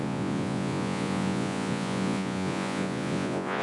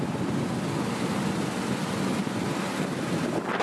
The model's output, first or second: first